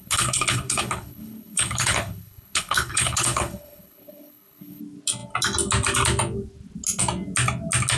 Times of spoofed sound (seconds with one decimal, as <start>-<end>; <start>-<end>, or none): 0.0-4.8